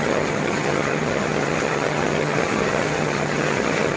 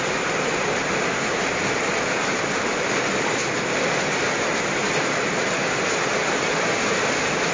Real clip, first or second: second